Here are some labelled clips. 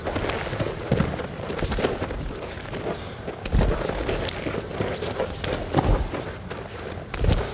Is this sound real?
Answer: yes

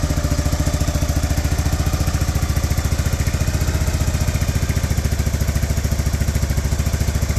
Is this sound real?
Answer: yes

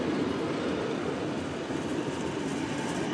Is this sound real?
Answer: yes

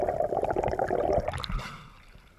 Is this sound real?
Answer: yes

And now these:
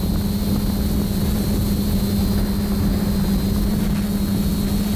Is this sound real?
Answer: yes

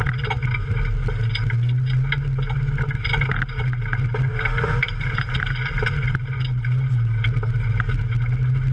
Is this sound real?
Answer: yes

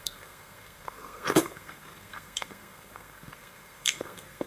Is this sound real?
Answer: no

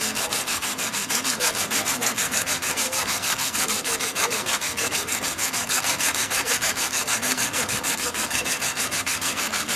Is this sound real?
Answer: no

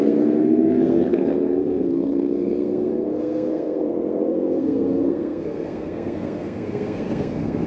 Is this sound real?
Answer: no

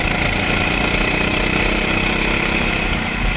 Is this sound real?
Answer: yes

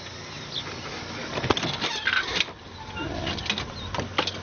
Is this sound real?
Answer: yes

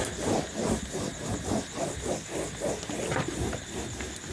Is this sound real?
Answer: yes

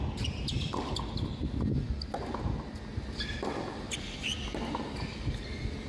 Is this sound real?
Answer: yes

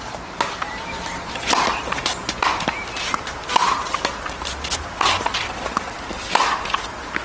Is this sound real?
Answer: yes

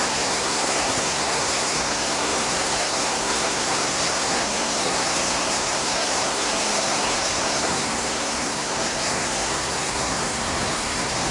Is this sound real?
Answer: no